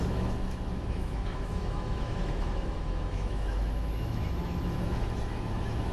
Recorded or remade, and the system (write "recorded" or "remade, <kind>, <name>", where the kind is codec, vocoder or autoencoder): remade, autoencoder, DAC-VAE